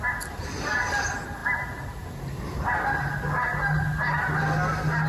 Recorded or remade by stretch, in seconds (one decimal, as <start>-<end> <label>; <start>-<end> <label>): 0.0-5.1 recorded